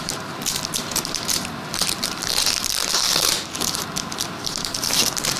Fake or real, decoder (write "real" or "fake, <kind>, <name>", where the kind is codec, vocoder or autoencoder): real